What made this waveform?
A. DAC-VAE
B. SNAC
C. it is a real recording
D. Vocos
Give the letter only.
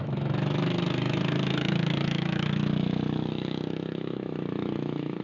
A